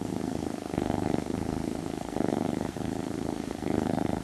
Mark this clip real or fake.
fake